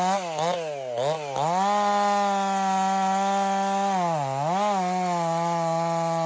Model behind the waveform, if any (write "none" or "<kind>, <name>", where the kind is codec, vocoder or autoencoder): none